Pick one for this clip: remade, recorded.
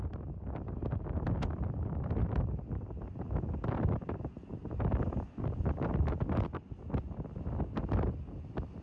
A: recorded